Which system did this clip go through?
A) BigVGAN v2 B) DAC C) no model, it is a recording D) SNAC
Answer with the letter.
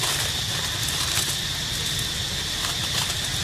C